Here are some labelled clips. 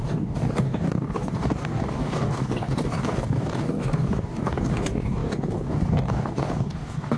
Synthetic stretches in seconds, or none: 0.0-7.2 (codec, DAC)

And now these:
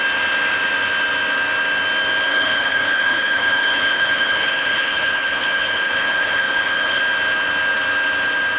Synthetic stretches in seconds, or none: 2.3-7.0 (codec, HILCodec)

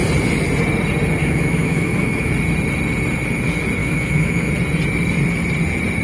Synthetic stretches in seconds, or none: 1.2-2.3 (autoencoder, DAC-VAE); 3.8-4.5